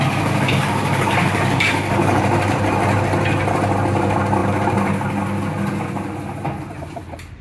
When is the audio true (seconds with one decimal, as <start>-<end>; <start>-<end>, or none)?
0.0-0.5; 2.2-7.4

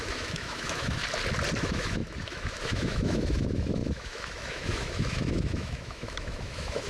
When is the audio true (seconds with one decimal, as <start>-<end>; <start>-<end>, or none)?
1.0-1.6

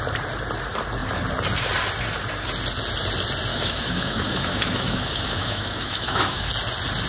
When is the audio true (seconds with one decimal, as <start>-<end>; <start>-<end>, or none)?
0.0-3.5; 6.5-7.1

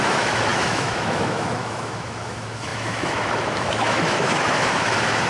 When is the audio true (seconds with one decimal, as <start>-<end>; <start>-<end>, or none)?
none

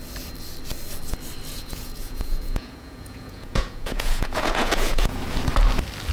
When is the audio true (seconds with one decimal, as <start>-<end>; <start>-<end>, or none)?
0.0-1.5; 5.2-6.1

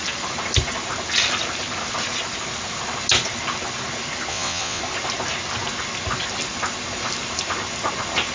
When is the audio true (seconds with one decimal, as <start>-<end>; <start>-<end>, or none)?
0.0-4.3; 4.8-8.3

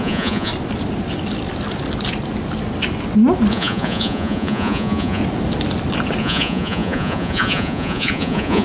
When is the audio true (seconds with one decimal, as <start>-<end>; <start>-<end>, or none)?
0.5-3.5; 5.2-6.2

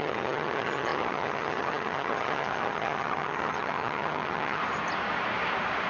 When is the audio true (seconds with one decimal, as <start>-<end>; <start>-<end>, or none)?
4.6-5.9